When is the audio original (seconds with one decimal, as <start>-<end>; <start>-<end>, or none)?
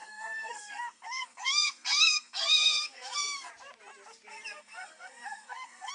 3.5-4.3